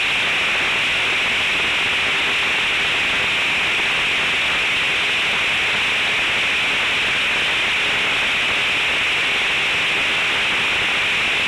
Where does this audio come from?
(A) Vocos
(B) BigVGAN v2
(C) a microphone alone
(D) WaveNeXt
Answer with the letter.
C